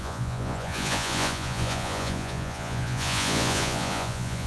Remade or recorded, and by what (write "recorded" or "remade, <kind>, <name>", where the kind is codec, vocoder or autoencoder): remade, vocoder, Vocos